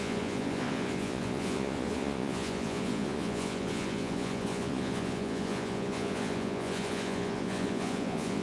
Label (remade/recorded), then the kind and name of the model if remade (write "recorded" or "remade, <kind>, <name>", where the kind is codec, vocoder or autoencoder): remade, vocoder, Vocos